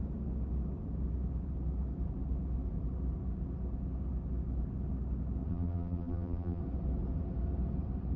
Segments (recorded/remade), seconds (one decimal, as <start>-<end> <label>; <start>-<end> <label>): 0.0-5.5 recorded; 5.5-6.6 remade; 6.6-8.2 recorded